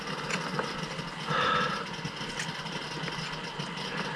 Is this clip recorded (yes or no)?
yes